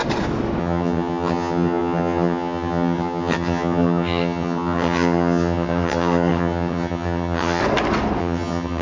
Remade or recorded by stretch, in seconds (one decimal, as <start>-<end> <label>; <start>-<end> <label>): 0.0-0.6 recorded; 0.6-7.6 remade; 7.6-8.2 recorded; 8.2-8.8 remade